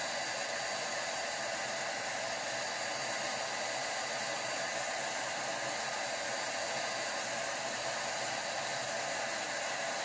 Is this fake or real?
real